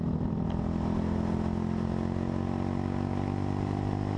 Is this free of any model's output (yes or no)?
yes